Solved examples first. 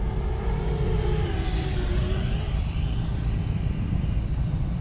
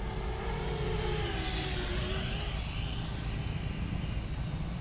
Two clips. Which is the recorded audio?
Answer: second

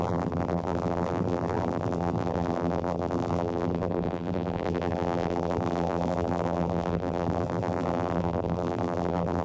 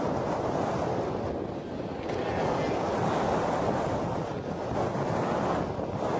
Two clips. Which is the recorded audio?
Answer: second